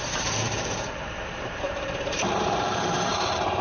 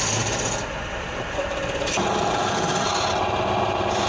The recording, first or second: second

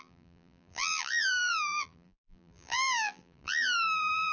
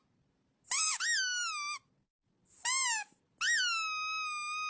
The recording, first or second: second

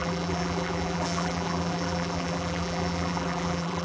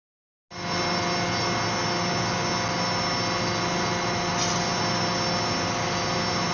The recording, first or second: second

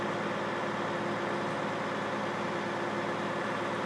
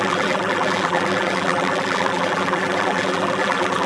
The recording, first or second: first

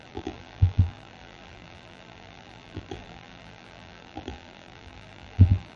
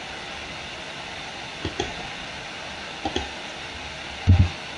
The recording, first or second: second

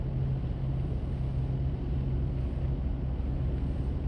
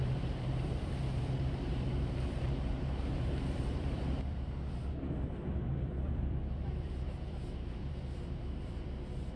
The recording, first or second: first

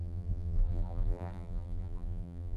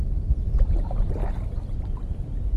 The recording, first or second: second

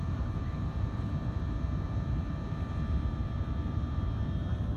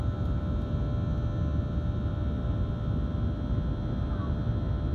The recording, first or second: second